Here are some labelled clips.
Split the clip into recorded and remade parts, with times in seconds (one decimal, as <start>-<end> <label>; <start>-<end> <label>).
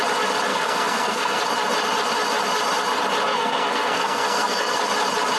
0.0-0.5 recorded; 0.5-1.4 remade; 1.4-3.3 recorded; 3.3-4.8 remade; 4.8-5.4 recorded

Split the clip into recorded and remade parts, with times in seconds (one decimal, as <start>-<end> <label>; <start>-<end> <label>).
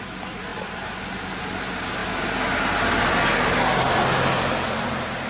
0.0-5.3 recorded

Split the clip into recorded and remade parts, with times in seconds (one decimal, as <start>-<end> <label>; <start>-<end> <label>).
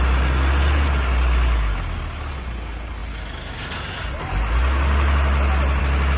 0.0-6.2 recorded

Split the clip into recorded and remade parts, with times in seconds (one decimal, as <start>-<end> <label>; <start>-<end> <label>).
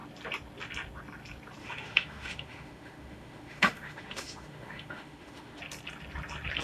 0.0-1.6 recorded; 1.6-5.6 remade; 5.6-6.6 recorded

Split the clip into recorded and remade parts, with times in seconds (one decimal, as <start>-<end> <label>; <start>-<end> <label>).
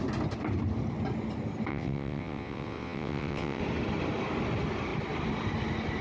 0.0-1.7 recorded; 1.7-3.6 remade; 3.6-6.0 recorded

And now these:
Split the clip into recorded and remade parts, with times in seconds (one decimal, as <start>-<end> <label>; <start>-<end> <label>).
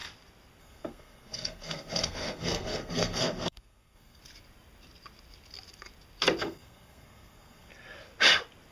0.0-0.6 recorded; 0.6-4.2 remade; 4.2-6.4 recorded; 6.4-7.7 remade; 7.7-8.7 recorded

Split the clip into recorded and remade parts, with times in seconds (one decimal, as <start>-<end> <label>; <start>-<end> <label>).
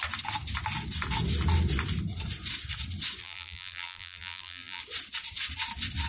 0.0-3.2 recorded; 3.2-4.8 remade; 4.8-6.1 recorded